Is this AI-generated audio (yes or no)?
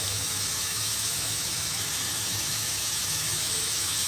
yes